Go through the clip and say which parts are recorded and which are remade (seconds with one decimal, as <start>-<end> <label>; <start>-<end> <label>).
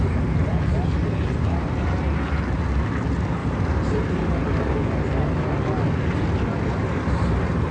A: 0.0-3.4 recorded; 3.4-4.2 remade; 4.2-7.7 recorded